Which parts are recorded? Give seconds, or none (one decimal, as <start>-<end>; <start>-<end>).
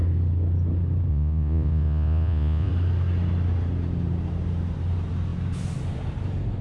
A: 0.0-1.1; 2.7-6.6